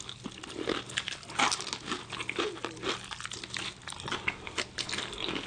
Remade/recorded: recorded